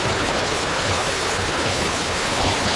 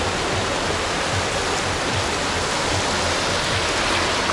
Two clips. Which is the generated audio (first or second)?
first